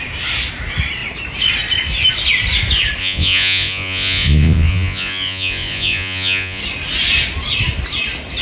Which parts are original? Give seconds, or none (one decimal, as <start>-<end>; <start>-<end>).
0.0-3.0; 6.6-8.4